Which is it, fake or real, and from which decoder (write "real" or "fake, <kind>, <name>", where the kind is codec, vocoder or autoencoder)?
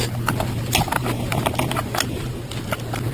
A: real